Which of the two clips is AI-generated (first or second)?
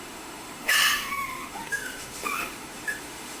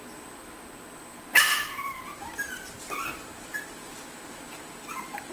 first